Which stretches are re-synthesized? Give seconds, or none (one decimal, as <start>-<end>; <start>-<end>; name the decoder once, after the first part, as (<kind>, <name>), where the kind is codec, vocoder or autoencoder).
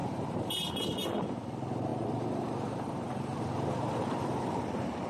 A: 0.0-0.7 (vocoder, BigVGAN v2); 1.9-4.6